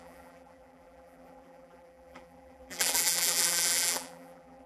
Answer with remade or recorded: remade